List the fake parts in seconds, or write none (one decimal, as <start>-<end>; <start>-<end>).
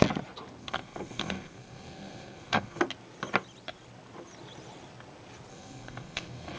0.6-2.8; 5.5-6.6